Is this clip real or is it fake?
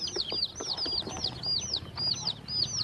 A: real